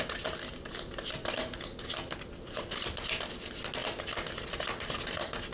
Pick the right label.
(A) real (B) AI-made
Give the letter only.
A